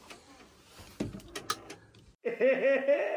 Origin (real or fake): real